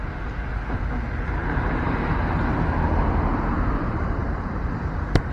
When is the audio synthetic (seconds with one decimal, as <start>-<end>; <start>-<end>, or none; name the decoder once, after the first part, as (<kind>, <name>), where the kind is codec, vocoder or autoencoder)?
1.8-2.5 (vocoder, BigVGAN v2); 3.7-5.3